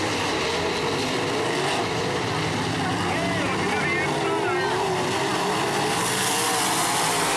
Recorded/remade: recorded